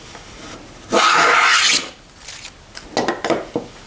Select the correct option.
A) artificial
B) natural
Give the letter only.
B